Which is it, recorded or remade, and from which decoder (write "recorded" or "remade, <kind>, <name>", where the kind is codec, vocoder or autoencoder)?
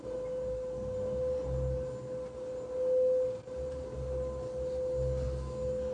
recorded